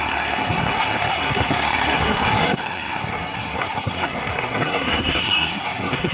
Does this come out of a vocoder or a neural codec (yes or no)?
yes